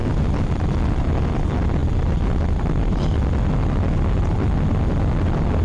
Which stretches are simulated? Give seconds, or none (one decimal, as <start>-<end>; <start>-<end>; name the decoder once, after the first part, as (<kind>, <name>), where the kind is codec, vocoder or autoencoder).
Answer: none